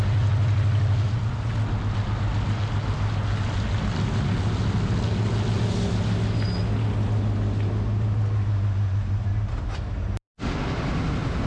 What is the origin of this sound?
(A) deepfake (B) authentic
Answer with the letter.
B